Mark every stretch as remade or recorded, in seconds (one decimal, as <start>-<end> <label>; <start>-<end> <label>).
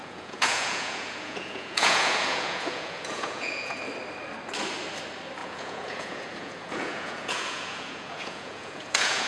0.0-3.8 remade; 3.8-5.4 recorded; 5.4-9.3 remade